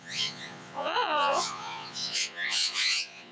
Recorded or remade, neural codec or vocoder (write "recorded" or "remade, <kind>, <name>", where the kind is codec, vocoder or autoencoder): remade, vocoder, Vocos